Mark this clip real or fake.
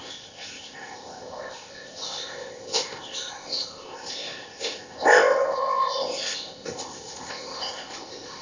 fake